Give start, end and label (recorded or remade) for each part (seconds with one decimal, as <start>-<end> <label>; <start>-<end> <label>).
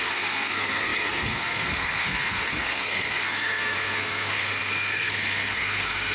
0.0-6.1 remade